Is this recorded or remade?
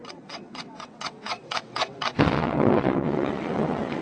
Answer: remade